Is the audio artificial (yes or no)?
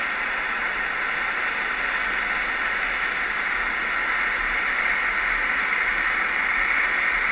no